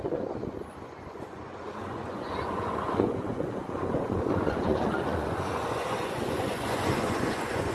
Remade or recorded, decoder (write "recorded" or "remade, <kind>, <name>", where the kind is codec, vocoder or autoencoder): remade, vocoder, Vocos